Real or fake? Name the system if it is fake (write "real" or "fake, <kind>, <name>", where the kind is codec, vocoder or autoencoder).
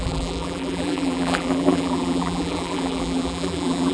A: fake, vocoder, BigVGAN v2